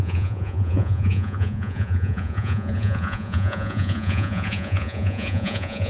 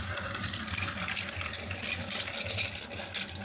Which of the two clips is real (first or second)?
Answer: second